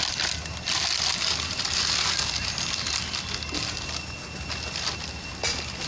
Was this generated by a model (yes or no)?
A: no